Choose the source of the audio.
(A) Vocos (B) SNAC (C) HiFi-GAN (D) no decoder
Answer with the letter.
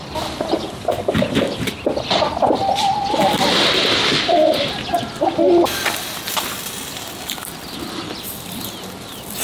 D